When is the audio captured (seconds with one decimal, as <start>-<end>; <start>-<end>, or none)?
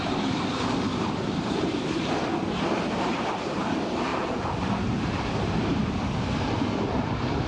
none